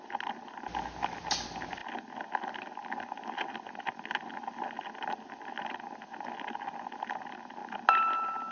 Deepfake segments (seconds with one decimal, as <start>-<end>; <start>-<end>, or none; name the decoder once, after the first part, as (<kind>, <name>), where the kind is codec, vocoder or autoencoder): none